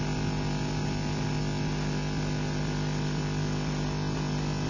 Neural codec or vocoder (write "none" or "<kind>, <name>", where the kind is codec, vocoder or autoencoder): none